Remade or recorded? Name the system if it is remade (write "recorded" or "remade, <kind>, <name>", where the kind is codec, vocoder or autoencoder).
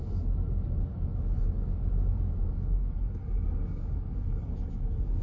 remade, codec, DAC